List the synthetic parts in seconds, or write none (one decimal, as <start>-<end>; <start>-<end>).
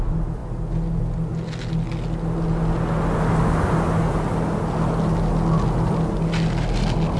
none